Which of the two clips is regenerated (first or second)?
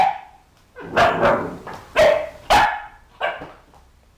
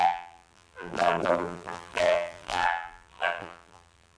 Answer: second